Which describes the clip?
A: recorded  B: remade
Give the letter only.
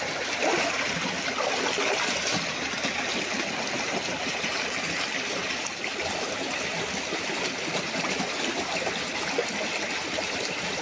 A